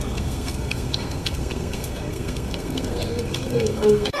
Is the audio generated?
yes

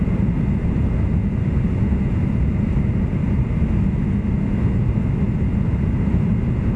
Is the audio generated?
no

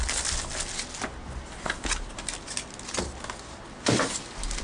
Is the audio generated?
no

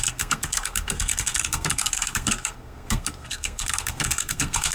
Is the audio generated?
yes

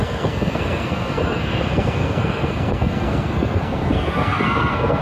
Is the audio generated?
yes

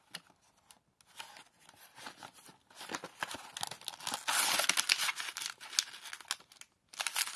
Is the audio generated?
no